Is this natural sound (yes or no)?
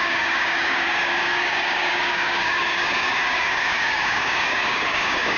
no